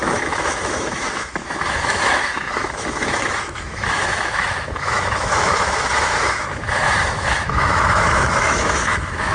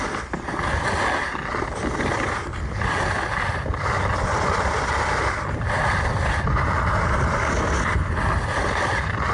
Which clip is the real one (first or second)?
second